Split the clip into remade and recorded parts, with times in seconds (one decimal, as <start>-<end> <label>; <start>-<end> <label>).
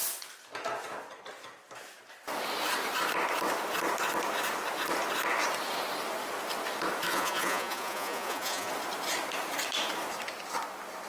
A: 0.0-7.1 recorded; 7.1-8.7 remade; 8.7-11.1 recorded